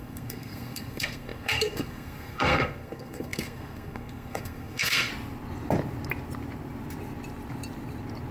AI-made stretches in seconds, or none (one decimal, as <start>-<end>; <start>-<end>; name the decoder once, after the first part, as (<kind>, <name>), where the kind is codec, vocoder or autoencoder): 0.0-5.1 (codec, SNAC)